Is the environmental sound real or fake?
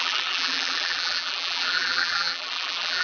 fake